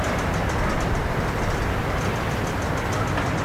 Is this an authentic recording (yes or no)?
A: yes